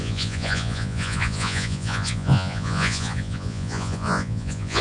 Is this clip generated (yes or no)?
yes